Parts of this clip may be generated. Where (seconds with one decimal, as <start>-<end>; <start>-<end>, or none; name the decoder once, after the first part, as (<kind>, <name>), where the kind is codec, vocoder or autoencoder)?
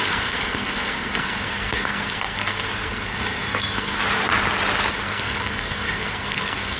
0.0-4.0 (codec, SNAC); 4.9-6.8